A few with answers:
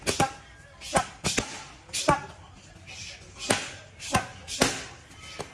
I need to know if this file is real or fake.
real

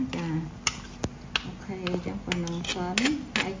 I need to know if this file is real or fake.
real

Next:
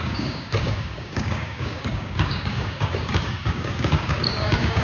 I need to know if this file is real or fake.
fake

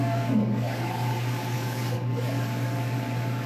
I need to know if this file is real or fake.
fake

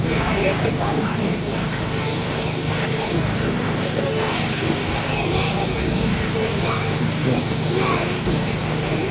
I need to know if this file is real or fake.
fake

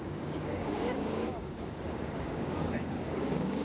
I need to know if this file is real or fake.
fake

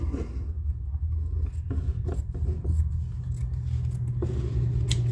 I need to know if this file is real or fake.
real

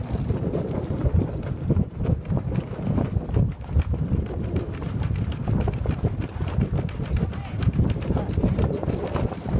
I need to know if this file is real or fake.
real